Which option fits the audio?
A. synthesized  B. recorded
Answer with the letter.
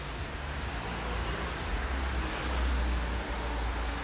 B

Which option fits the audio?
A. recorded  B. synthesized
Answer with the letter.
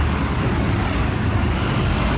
B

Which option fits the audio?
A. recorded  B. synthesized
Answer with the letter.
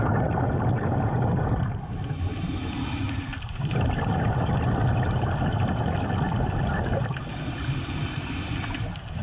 A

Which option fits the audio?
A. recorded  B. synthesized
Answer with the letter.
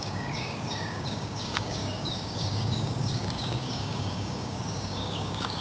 B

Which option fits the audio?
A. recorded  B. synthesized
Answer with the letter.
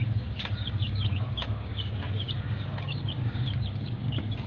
B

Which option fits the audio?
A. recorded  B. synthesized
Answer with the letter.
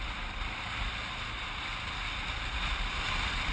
A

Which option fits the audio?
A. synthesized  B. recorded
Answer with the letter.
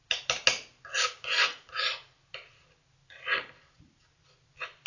B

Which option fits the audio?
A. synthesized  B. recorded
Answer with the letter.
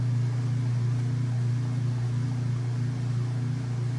B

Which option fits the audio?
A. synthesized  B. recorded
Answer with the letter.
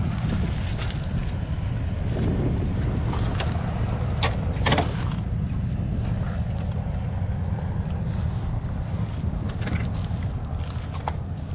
B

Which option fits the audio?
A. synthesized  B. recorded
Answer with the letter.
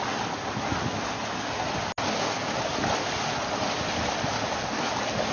B